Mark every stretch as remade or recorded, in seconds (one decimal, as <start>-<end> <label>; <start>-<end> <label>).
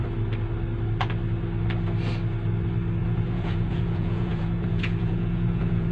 0.0-3.0 recorded; 3.0-5.9 remade